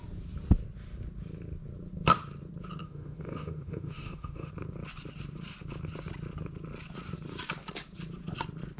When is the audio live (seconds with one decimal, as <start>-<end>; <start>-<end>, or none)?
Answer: 0.0-2.8; 4.5-8.8